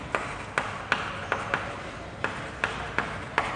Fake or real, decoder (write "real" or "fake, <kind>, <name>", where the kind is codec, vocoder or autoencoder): real